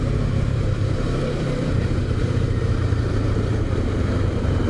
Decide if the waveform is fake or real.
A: fake